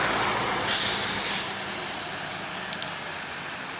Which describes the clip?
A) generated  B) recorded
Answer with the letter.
B